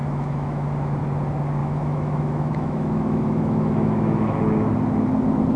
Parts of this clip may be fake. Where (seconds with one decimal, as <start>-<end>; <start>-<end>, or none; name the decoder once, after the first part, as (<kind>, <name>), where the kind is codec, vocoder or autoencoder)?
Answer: 0.0-1.0 (autoencoder, DAC-VAE); 1.6-4.4